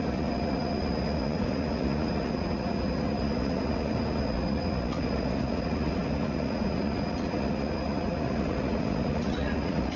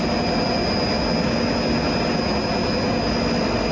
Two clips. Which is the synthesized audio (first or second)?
first